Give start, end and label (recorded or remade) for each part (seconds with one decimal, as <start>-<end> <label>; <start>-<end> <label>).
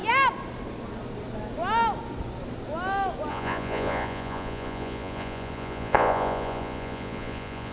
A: 0.0-3.3 recorded; 3.3-7.7 remade